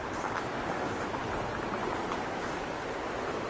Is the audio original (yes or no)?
yes